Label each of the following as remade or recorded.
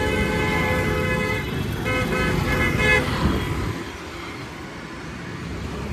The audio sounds recorded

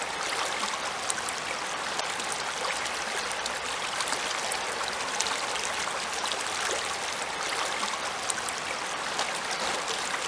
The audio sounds recorded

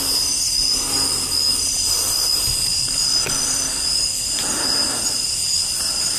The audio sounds recorded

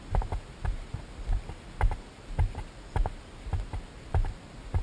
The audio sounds recorded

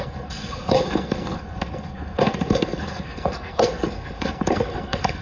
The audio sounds remade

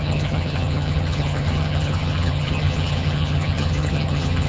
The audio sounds remade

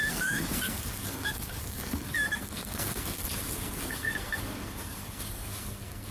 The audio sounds remade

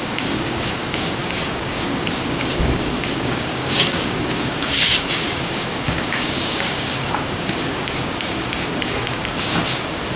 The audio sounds remade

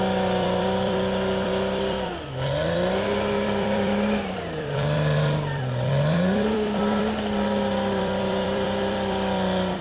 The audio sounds remade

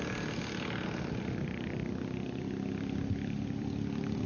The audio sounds recorded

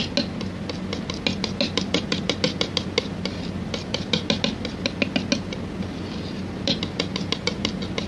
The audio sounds recorded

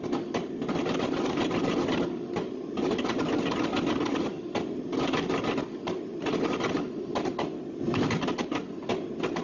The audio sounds recorded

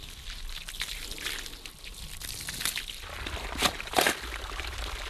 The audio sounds recorded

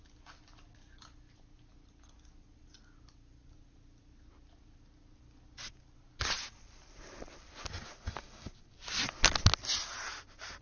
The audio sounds recorded